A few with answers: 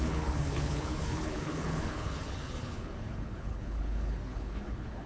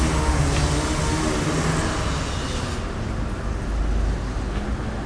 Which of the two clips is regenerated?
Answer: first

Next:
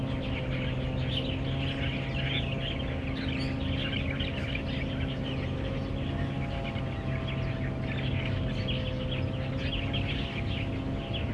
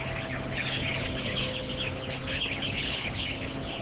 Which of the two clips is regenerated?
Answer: second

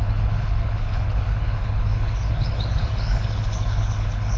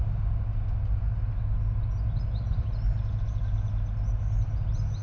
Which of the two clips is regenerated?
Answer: first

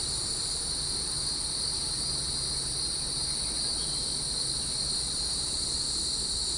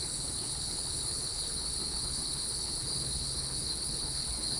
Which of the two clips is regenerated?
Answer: second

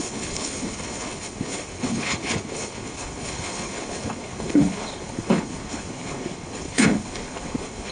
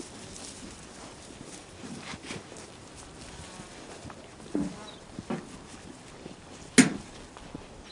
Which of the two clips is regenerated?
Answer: first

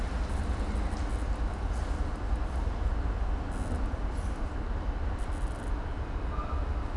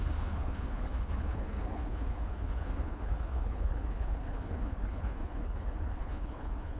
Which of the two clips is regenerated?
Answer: second